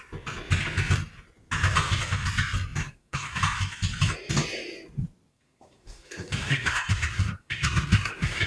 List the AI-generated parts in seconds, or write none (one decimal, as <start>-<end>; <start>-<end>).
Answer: 2.8-3.4; 5.3-8.5